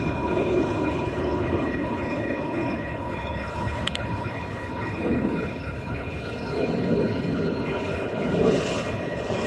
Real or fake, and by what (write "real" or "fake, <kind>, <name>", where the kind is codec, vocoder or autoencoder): fake, codec, HILCodec